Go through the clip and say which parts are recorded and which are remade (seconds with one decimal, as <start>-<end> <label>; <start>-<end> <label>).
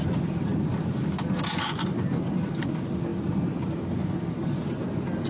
0.0-5.3 recorded